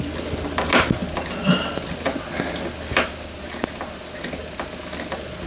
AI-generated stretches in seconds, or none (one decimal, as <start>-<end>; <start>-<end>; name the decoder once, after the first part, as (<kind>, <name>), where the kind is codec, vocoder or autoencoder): none